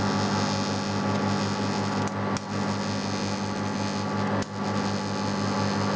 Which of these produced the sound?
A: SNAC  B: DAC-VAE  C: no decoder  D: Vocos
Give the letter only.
C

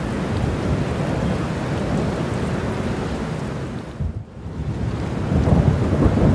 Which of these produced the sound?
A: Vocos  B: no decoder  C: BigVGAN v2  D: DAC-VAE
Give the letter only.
B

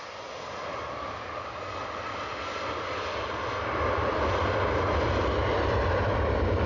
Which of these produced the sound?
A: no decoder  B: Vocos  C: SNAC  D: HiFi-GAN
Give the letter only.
A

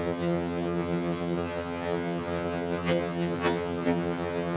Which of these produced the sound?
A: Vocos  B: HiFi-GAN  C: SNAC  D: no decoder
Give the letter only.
B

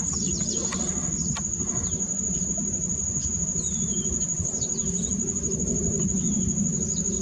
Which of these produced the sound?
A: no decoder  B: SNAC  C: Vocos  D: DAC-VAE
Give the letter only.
A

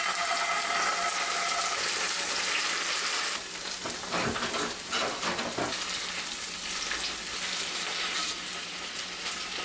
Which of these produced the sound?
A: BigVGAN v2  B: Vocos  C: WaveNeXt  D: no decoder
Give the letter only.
D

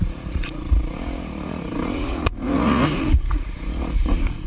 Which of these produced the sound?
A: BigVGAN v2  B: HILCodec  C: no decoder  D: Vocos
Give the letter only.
D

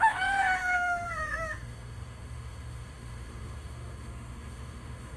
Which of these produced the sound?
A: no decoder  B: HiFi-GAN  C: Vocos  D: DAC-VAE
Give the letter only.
D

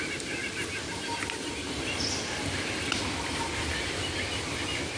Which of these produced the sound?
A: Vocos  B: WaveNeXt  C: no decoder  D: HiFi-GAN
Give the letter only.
C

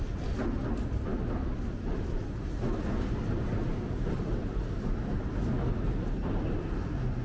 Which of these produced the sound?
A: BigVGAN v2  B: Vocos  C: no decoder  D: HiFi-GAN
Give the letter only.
C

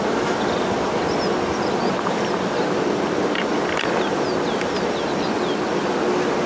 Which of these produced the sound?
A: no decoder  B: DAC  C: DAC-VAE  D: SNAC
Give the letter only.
A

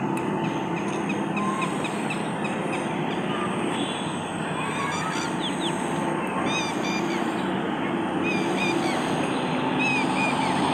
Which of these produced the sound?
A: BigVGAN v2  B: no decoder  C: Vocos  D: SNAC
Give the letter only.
B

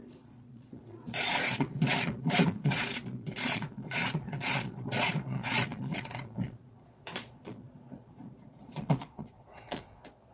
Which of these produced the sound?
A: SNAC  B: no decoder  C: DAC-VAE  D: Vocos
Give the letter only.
D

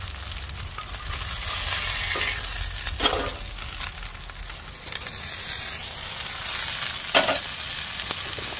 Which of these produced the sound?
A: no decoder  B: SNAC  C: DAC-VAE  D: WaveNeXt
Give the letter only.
A